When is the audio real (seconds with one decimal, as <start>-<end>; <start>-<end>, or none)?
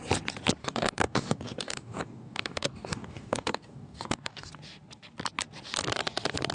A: 0.0-0.6; 4.5-6.5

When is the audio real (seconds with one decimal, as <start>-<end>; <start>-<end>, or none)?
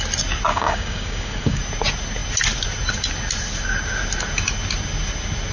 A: 0.0-0.5; 1.6-5.5